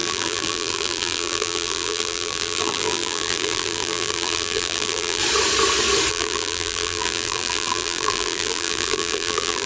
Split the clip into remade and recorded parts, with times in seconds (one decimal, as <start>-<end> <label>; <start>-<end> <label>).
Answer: 0.0-5.2 remade; 5.2-6.1 recorded; 6.1-9.7 remade